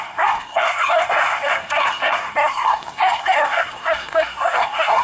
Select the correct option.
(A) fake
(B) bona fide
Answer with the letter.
A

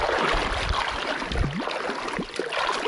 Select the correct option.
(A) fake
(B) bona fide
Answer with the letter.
B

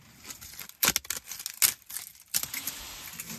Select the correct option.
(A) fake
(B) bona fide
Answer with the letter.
B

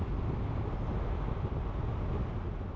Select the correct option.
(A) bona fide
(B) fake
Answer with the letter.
A